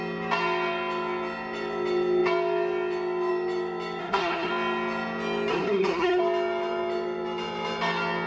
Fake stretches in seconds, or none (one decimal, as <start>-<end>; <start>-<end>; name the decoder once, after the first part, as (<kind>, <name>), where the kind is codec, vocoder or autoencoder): 4.0-4.5 (codec, SNAC); 5.5-6.2